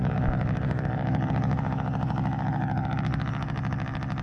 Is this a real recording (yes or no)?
no